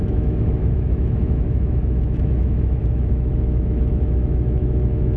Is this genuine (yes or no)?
no